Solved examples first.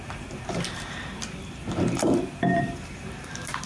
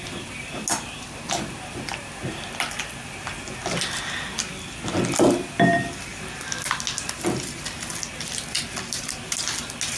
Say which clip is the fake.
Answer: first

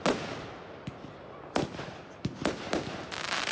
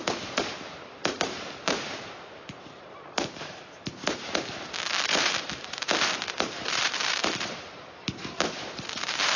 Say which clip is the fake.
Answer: second